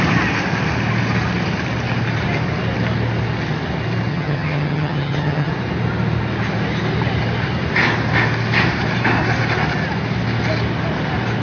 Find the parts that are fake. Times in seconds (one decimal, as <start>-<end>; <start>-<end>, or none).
4.1-5.5

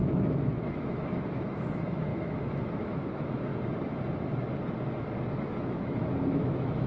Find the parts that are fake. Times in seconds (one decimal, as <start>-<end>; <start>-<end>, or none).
0.0-3.5; 5.4-6.9